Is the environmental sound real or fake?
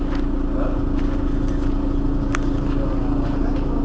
real